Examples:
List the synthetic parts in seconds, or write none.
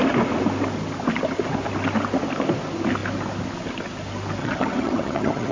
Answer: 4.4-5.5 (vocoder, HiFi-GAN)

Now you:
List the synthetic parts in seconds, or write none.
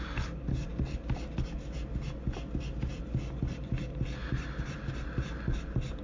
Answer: none